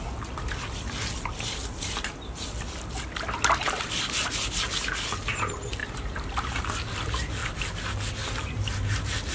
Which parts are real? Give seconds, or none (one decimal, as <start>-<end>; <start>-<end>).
0.0-1.6; 2.1-5.8; 6.6-9.3